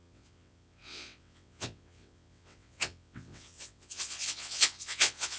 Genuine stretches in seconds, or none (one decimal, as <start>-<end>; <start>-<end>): none